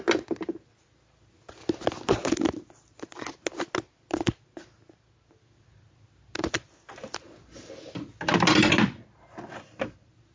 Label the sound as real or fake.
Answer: real